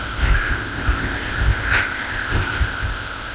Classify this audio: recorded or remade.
remade